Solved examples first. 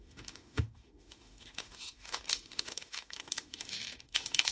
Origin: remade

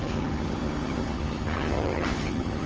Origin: remade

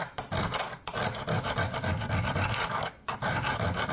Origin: recorded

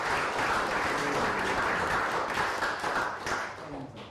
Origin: recorded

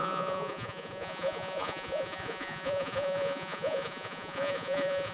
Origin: remade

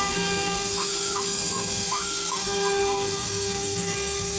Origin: remade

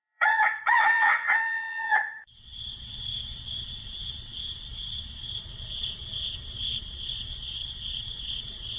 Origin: remade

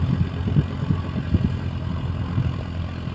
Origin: recorded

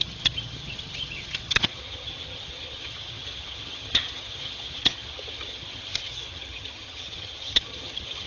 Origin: remade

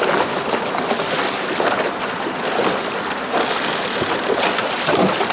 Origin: recorded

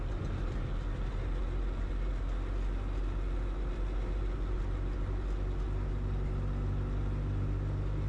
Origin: recorded